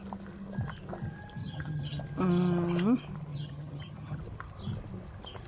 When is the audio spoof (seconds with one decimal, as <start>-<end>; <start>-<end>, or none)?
1.4-2.0; 3.3-4.2